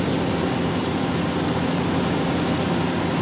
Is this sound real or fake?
real